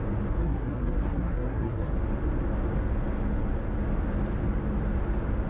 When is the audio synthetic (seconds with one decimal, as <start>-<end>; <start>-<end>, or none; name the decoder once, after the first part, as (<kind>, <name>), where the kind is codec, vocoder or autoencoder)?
0.4-1.9 (codec, SNAC)